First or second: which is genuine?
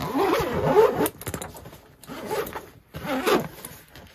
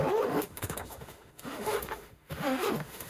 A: first